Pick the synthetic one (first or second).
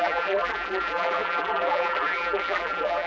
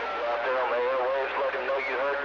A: first